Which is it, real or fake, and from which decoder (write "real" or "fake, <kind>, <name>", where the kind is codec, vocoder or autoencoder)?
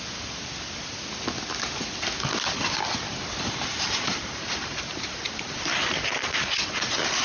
real